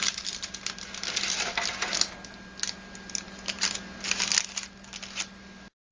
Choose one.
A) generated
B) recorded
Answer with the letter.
B